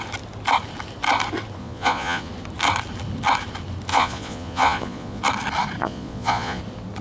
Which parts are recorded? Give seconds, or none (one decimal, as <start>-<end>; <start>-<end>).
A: 0.0-1.6; 2.3-3.9; 5.2-5.8; 6.6-7.0